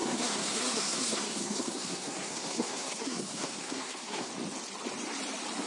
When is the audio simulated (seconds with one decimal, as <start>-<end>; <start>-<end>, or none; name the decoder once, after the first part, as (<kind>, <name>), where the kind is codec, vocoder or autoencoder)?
0.0-4.3 (codec, SNAC)